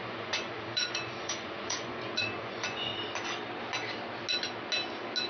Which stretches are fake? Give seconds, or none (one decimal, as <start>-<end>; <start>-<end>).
0.0-2.9